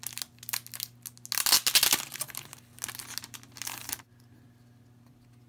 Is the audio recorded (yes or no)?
yes